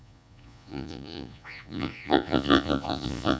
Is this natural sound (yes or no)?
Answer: no